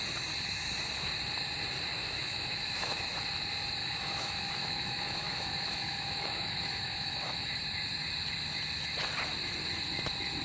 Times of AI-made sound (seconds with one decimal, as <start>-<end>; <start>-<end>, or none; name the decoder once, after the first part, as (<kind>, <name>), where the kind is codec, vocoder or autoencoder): 2.0-3.0 (autoencoder, DAC-VAE); 3.8-7.6